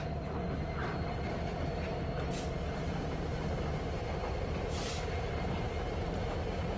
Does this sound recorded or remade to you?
remade